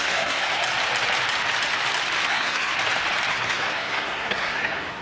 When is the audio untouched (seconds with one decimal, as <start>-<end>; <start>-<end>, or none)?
0.6-2.3; 2.7-3.3